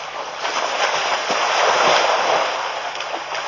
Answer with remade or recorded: recorded